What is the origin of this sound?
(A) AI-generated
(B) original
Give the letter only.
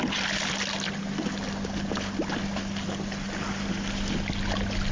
B